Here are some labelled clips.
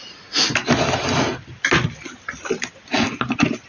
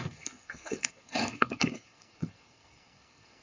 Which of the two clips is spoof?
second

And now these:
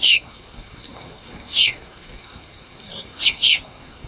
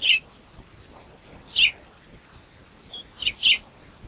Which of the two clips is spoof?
first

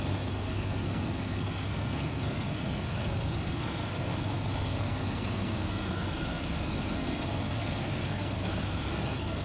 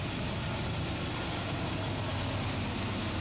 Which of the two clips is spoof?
first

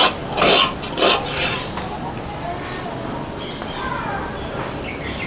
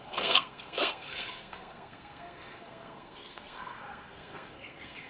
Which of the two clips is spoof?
second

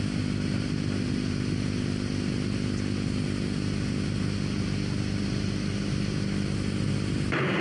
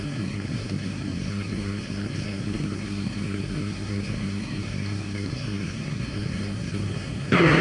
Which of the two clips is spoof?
second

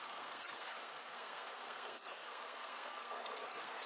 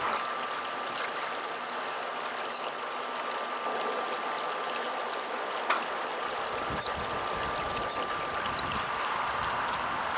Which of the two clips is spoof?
first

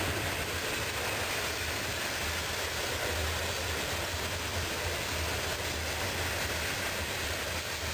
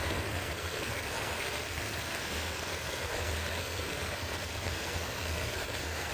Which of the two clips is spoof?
second